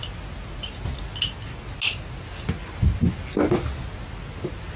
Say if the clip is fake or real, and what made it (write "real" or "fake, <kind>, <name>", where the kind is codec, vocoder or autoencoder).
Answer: real